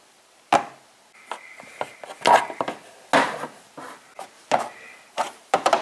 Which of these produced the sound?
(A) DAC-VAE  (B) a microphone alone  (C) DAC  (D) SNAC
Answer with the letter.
B